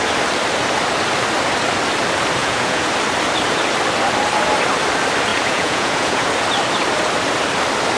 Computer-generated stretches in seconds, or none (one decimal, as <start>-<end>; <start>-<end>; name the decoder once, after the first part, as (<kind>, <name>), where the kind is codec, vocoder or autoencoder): 2.4-2.9 (vocoder, Vocos); 5.3-6.3